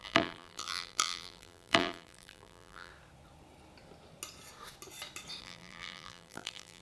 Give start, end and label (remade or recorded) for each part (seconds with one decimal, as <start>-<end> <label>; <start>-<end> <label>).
0.0-2.9 remade; 2.9-5.4 recorded; 5.4-6.8 remade